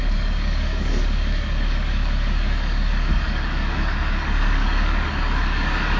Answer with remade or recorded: remade